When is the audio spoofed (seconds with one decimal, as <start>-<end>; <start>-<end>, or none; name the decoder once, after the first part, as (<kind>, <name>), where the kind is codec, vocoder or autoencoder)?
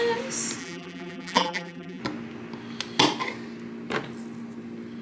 0.6-2.0 (vocoder, BigVGAN v2)